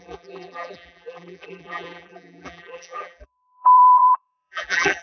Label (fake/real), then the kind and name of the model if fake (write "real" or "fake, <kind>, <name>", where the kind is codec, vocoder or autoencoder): fake, vocoder, BigVGAN v2